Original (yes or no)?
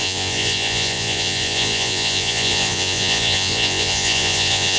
no